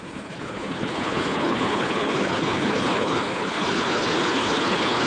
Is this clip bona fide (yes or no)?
no